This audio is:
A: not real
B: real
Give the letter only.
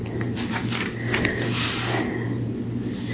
B